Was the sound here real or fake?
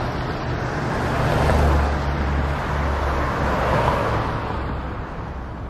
real